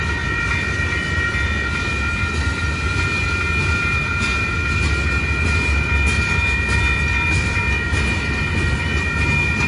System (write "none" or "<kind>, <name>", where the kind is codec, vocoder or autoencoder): none